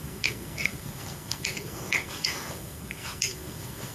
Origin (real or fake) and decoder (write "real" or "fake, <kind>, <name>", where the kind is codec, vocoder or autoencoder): fake, codec, SNAC